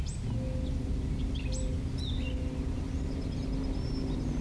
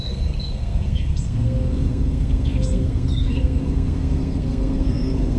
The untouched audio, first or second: first